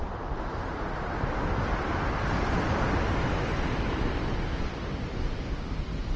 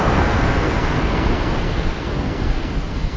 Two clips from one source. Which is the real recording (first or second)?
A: first